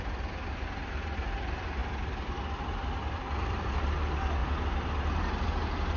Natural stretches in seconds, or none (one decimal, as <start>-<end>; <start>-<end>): 0.0-1.8; 2.4-4.4; 5.0-6.0